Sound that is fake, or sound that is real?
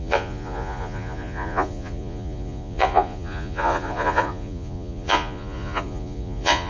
fake